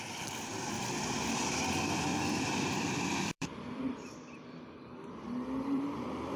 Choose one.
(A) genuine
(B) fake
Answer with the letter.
B